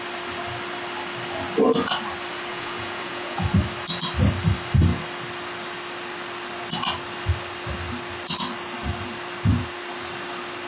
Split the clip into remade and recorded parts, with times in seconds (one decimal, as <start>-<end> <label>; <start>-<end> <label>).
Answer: 0.0-2.5 recorded; 2.5-3.4 remade; 3.4-10.7 recorded